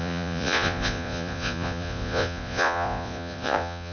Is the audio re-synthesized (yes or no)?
yes